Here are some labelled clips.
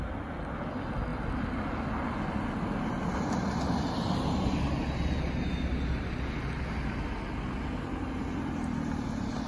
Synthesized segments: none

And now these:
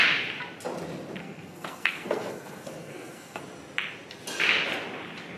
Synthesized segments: 1.2-3.4 (codec, SNAC)

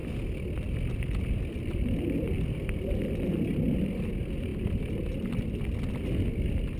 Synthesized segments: none

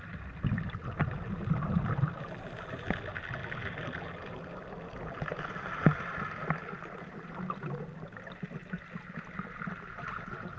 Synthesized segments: none

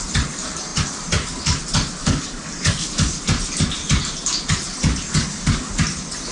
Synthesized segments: 2.0-3.2 (codec, DAC); 5.2-5.8

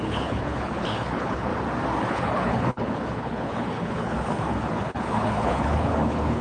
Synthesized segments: 0.0-1.5 (codec, HILCodec); 2.1-6.4

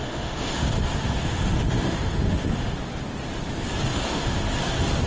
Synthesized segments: 0.0-0.7 (autoencoder, DAC-VAE); 1.2-2.7; 3.9-4.4

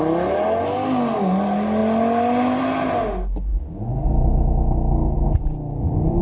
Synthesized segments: none